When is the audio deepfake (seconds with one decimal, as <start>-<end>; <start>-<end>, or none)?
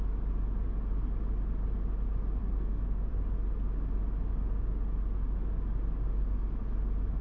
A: 2.4-3.1